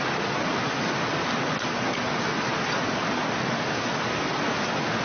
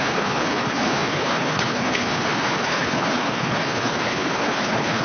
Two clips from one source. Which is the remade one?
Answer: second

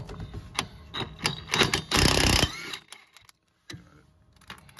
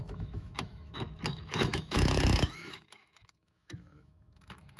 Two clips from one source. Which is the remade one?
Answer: second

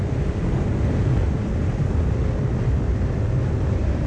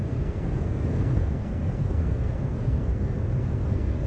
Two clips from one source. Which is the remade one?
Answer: second